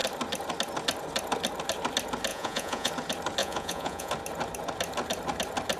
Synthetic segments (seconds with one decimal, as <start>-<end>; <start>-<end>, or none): 2.3-2.9; 3.4-4.1